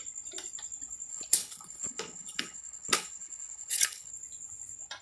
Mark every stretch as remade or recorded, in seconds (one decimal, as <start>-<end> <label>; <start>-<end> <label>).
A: 0.0-1.1 recorded; 1.1-4.1 remade; 4.1-5.0 recorded